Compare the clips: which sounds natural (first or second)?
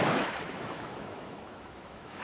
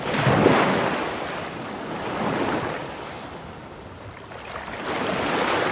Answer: second